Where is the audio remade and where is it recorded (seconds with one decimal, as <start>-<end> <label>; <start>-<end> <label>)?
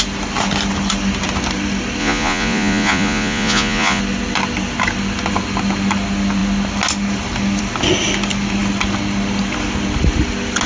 0.0-2.0 recorded; 2.0-4.0 remade; 4.0-10.7 recorded